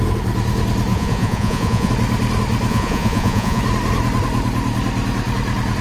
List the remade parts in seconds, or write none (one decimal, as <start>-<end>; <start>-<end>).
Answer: 0.9-1.9; 2.7-3.6